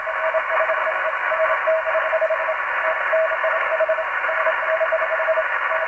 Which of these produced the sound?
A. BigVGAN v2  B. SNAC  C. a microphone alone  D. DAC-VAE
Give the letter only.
C